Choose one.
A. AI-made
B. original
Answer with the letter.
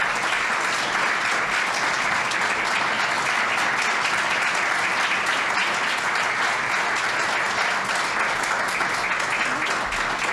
B